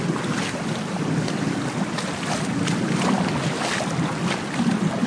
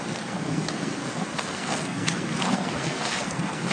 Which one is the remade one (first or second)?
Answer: second